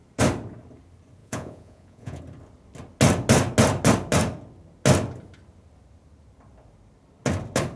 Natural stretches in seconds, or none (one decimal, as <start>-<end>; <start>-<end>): 0.0-1.2; 2.2-7.8